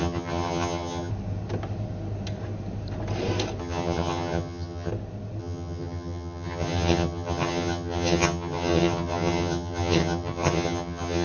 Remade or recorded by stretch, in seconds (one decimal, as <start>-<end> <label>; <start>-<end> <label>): 0.0-1.1 remade; 1.1-3.6 recorded; 3.6-4.9 remade; 4.9-5.4 recorded; 5.4-11.2 remade